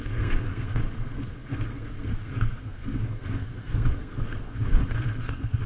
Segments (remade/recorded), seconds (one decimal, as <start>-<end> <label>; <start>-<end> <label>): 0.0-5.7 remade